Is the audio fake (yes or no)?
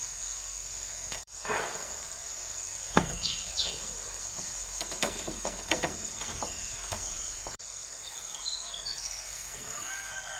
yes